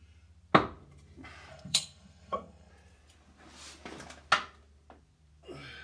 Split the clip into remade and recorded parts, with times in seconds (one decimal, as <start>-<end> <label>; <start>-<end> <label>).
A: 0.0-1.5 recorded; 1.5-2.7 remade; 2.7-5.8 recorded